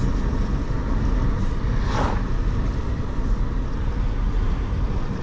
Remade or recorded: recorded